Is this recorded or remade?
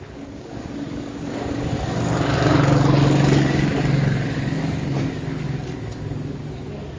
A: remade